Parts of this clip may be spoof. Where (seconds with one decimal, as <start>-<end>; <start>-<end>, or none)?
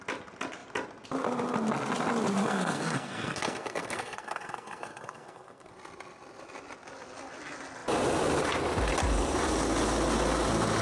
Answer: 2.4-5.7